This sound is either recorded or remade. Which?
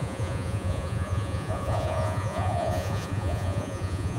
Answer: remade